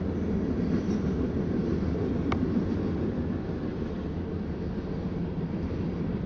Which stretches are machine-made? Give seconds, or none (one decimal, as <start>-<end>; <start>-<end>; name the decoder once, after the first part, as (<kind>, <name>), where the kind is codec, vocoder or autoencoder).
none